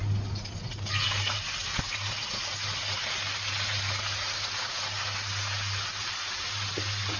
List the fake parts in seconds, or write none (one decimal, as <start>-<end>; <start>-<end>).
none